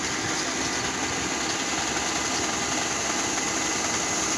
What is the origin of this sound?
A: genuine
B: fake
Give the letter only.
A